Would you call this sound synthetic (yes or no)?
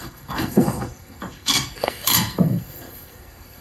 yes